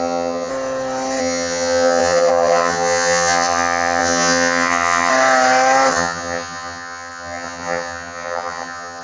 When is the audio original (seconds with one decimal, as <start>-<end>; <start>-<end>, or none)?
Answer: 0.5-1.2; 5.1-5.9